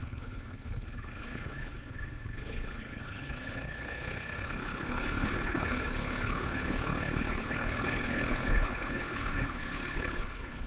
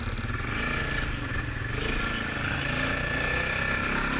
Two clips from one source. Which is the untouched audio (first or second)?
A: second